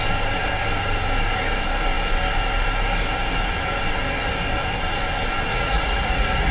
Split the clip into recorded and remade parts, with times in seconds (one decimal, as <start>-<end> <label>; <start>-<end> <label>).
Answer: 0.0-5.5 recorded; 5.5-6.5 remade